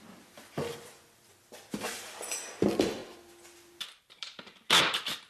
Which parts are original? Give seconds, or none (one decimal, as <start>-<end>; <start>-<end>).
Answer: 0.0-5.3